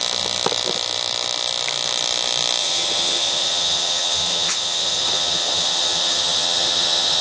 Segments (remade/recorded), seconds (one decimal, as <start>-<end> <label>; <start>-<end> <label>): 0.0-2.6 recorded; 2.6-7.2 remade